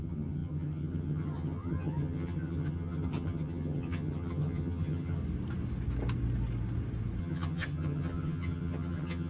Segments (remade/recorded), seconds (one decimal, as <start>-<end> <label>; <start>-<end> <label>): 0.0-5.2 remade; 5.2-7.2 recorded; 7.2-9.3 remade